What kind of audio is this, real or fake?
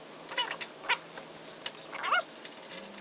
real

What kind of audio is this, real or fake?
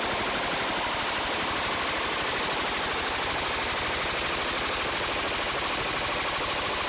real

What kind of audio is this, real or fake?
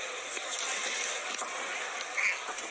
real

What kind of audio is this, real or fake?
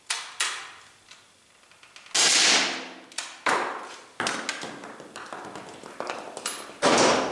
real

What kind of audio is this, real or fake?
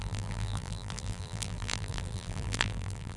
fake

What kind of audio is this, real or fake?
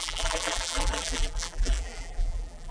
fake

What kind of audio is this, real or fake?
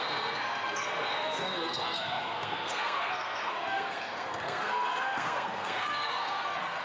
fake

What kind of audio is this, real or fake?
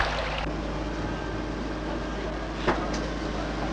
real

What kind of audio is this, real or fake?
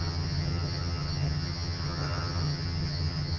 fake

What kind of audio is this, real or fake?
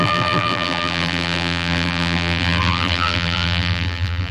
fake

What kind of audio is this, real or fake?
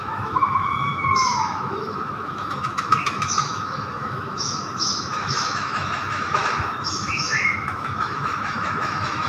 fake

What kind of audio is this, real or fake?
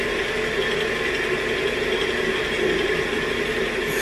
real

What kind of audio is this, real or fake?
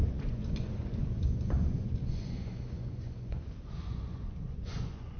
fake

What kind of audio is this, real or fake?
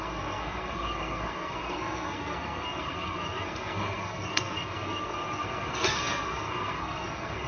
fake